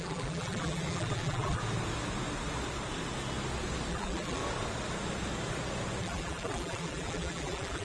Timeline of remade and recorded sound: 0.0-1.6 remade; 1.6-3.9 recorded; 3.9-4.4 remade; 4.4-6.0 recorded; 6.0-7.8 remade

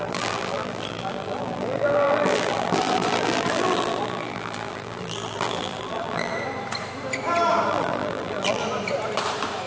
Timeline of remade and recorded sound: 0.0-6.3 remade; 6.3-7.7 recorded; 7.7-8.6 remade; 8.6-9.7 recorded

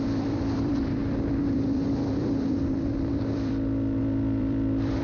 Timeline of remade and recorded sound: 0.0-5.0 remade

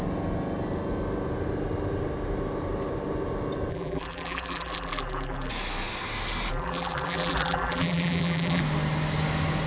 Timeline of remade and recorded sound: 0.0-3.7 recorded; 3.7-5.5 remade; 5.5-6.5 recorded; 6.5-8.6 remade; 8.6-9.7 recorded

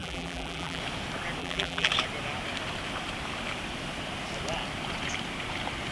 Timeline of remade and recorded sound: 0.0-0.8 remade; 0.8-1.4 recorded; 1.4-1.9 remade; 1.9-5.9 recorded

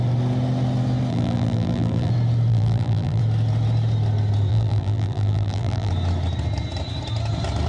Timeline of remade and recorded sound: 0.0-1.1 recorded; 1.1-2.1 remade; 2.1-2.5 recorded; 2.5-3.2 remade; 3.2-4.5 recorded; 4.5-5.9 remade; 5.9-7.7 recorded

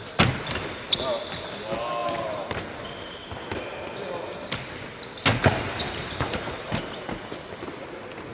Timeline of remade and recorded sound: 0.0-2.0 recorded; 2.0-3.3 remade; 3.3-5.3 recorded; 5.3-6.8 remade; 6.8-8.3 recorded